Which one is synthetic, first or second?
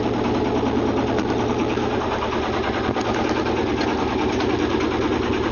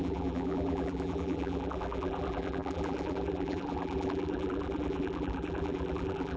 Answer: second